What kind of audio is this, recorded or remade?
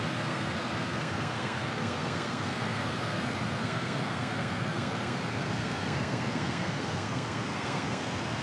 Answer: remade